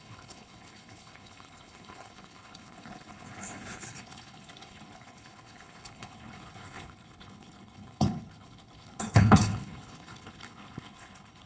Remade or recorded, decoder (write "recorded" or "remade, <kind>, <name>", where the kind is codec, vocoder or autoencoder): remade, codec, HILCodec